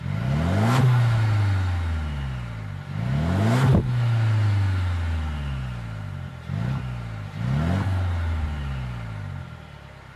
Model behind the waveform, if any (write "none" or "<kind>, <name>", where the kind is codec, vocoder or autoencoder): none